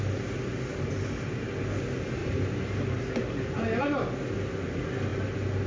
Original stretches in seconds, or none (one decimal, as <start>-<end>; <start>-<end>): 0.0-2.2; 3.0-5.7